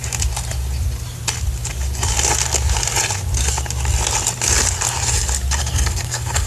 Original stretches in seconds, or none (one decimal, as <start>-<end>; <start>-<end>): 0.0-5.6